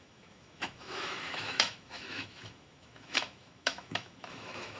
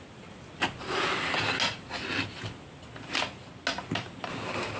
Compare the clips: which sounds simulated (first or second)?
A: first